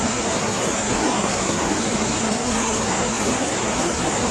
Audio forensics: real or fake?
fake